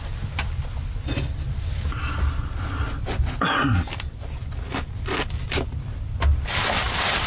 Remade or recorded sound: recorded